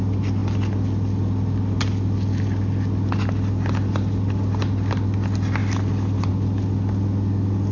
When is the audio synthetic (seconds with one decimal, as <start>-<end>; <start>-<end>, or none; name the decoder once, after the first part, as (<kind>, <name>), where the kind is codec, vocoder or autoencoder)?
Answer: none